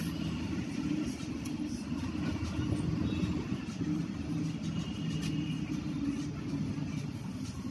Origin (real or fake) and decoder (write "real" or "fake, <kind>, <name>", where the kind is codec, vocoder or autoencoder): real